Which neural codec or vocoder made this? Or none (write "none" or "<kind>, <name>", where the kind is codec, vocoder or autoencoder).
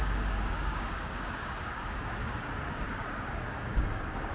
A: codec, DAC